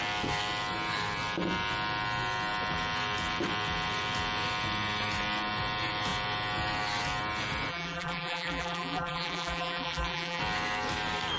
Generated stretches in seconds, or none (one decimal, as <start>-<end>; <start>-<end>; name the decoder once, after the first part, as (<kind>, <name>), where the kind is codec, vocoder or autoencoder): 7.7-10.4 (vocoder, BigVGAN v2)